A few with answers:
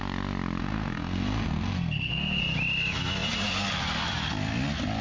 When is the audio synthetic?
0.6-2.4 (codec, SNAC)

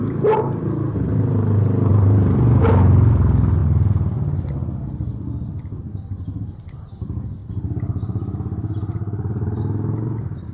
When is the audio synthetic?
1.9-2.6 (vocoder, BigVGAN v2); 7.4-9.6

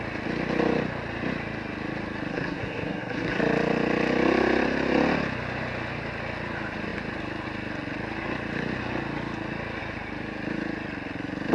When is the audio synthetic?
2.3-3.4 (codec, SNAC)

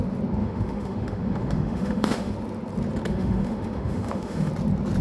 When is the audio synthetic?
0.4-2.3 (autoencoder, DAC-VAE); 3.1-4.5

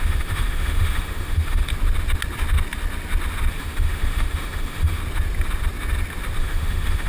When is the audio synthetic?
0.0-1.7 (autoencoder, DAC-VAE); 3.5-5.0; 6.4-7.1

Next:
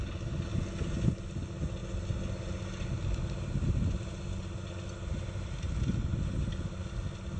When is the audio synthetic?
none